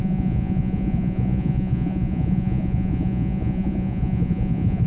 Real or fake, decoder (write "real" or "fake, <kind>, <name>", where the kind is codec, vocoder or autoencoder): fake, vocoder, Vocos